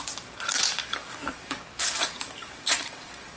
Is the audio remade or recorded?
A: remade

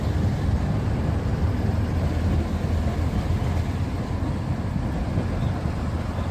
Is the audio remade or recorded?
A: recorded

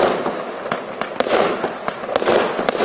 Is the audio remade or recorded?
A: recorded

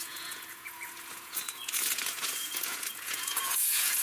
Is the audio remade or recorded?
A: remade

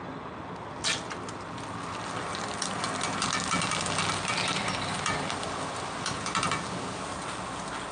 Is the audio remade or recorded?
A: recorded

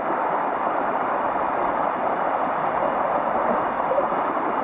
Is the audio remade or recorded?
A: recorded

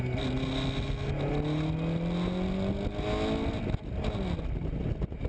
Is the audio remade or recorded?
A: recorded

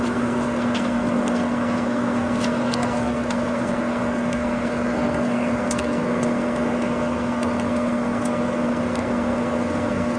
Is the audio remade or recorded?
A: remade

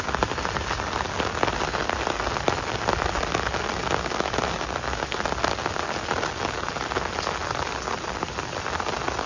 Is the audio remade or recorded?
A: recorded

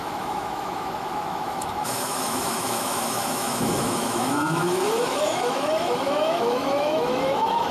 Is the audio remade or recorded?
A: remade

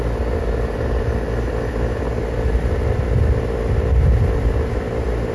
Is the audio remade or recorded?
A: recorded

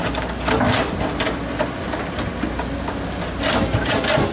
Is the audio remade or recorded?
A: recorded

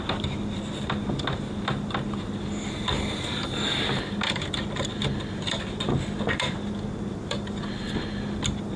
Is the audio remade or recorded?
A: recorded